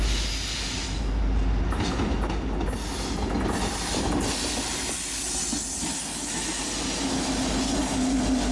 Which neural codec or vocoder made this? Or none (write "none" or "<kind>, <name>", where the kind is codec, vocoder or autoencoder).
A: none